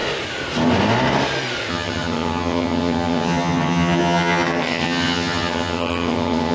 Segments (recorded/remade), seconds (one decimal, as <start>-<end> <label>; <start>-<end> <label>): 0.0-1.7 recorded; 1.7-6.5 remade